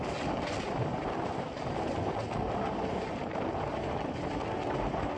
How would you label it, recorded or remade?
recorded